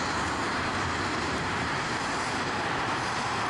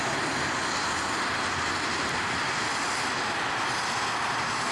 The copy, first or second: first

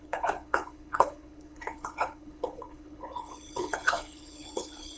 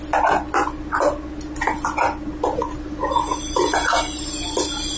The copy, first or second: first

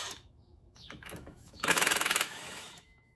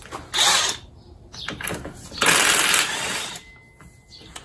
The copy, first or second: first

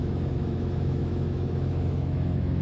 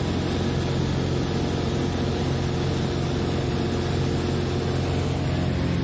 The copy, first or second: first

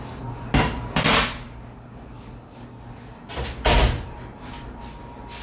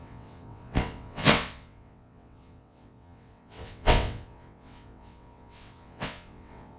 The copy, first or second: second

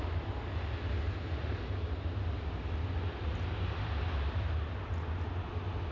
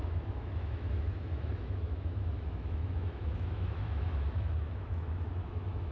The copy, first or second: second